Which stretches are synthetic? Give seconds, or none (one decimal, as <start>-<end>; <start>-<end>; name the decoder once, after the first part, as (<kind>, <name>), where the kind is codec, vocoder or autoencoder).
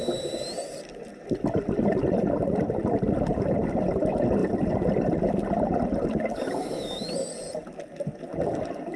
none